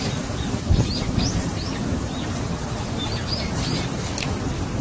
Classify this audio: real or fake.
fake